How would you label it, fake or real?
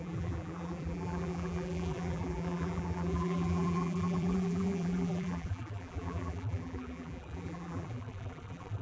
fake